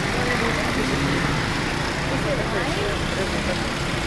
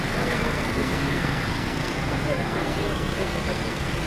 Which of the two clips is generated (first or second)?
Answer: second